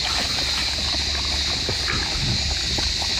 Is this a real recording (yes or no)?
yes